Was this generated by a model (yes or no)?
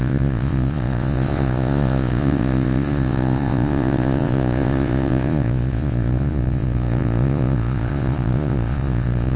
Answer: yes